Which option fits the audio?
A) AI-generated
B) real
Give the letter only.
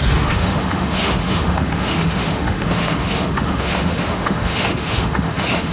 A